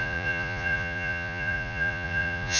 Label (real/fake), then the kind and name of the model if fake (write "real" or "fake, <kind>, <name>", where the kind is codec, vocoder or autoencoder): fake, vocoder, Vocos